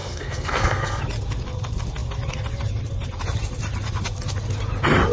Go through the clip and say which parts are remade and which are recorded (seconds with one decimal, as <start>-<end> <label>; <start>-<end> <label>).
0.0-1.0 remade; 1.0-5.1 recorded